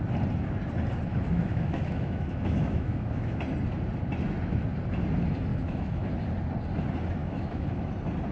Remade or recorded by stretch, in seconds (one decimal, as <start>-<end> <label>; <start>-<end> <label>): 0.0-1.1 recorded; 1.1-3.4 remade; 3.4-5.5 recorded; 5.5-6.1 remade; 6.1-7.2 recorded; 7.2-7.9 remade; 7.9-8.3 recorded